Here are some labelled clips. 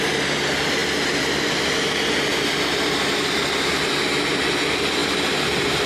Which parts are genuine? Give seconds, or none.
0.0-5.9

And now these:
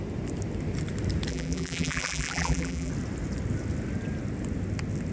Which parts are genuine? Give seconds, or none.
0.0-1.3; 2.9-5.1